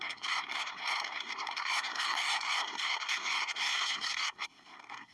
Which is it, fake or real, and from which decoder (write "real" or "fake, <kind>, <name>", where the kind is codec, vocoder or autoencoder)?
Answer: fake, codec, SNAC